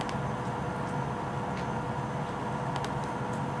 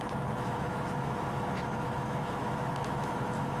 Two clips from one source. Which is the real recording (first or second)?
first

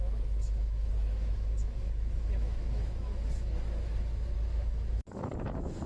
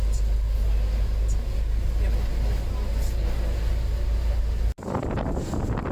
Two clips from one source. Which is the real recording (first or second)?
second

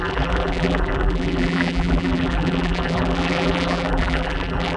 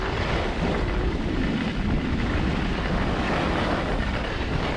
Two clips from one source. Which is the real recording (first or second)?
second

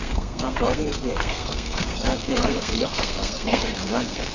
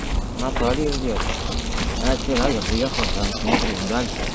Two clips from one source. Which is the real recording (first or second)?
second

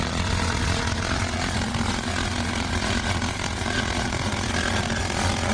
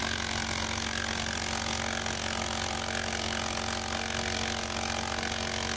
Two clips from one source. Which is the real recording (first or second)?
second